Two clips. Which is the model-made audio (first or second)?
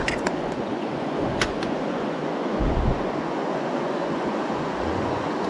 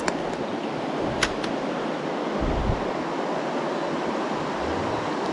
first